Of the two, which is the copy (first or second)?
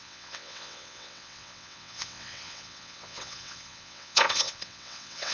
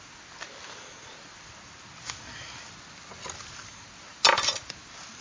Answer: first